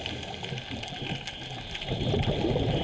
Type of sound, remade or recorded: recorded